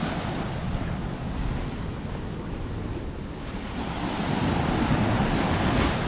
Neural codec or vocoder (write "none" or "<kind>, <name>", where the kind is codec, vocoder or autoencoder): none